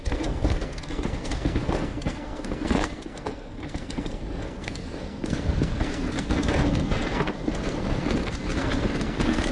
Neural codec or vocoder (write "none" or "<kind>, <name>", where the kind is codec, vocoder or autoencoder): codec, SNAC